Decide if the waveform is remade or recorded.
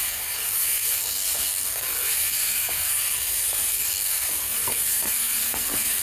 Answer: remade